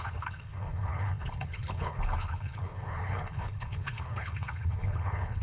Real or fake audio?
fake